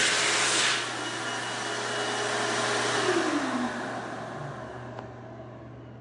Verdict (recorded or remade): recorded